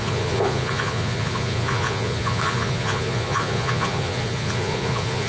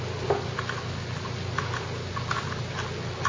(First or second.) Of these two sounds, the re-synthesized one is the first